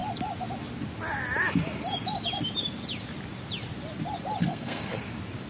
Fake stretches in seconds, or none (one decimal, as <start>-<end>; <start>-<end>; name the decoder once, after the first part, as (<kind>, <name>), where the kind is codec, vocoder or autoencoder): 4.4-5.0 (codec, SNAC)

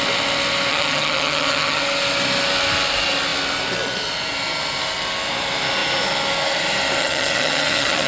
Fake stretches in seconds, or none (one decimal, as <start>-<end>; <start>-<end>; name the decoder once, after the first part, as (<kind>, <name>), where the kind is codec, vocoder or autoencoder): 0.7-1.8 (vocoder, HiFi-GAN); 7.0-8.1

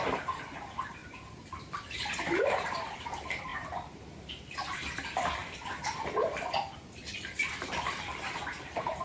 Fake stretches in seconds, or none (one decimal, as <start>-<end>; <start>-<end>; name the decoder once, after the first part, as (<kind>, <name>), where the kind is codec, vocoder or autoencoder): 0.0-1.0 (vocoder, BigVGAN v2); 2.2-5.4; 6.7-9.0

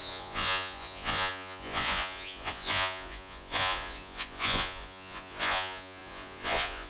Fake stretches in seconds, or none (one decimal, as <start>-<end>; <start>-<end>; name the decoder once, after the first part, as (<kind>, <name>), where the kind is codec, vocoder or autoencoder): 0.0-6.9 (vocoder, Vocos)

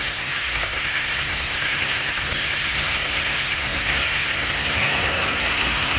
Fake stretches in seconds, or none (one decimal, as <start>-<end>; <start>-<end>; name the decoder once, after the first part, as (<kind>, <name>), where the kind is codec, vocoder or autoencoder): 0.0-6.0 (codec, SNAC)

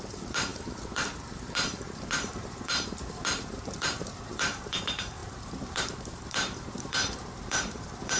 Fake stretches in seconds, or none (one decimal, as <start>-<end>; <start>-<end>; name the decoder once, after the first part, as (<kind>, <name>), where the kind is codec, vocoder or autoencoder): 0.0-8.2 (vocoder, BigVGAN v2)

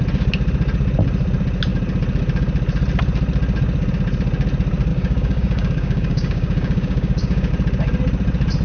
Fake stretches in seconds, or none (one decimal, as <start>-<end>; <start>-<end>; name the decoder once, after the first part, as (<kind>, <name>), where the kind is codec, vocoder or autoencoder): 4.9-7.5 (codec, DAC)